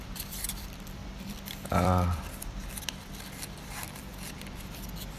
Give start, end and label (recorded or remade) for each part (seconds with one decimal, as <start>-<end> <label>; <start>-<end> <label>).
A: 0.0-4.1 remade; 4.1-5.2 recorded

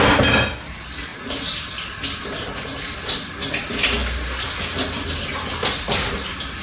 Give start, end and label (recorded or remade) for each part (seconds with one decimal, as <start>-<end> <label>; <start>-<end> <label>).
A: 0.0-6.6 recorded

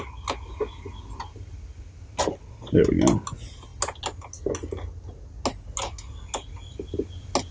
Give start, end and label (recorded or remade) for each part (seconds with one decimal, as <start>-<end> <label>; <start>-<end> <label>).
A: 0.0-7.5 recorded

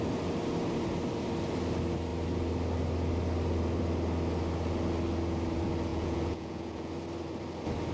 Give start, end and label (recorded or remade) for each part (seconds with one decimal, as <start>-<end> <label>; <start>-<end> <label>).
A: 0.0-5.9 recorded; 5.9-6.9 remade; 6.9-7.9 recorded

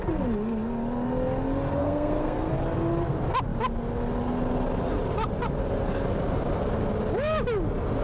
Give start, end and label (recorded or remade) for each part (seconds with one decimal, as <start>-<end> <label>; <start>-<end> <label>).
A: 0.0-1.8 recorded; 1.8-2.5 remade; 2.5-8.0 recorded

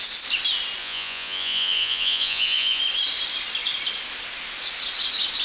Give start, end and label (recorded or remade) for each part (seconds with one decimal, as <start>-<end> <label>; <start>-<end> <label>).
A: 0.0-0.8 recorded; 0.8-2.8 remade; 2.8-5.4 recorded

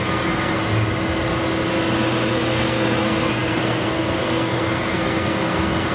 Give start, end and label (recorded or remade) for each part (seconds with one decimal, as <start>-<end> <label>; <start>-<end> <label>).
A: 0.0-0.6 remade; 0.6-2.3 recorded; 2.3-5.9 remade